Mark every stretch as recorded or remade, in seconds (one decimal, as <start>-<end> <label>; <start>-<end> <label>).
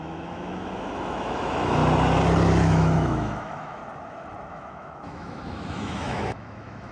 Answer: 0.0-1.8 remade; 1.8-2.6 recorded; 2.6-3.8 remade; 3.8-4.5 recorded; 4.5-6.9 remade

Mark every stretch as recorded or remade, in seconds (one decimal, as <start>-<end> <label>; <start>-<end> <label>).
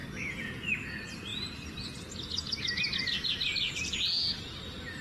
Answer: 0.0-0.7 remade; 0.7-5.0 recorded